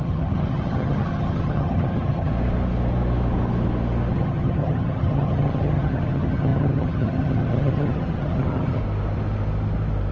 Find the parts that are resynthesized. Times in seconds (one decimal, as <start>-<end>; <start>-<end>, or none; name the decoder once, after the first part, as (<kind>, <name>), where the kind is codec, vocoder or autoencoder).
0.0-2.3 (vocoder, HiFi-GAN); 4.1-8.8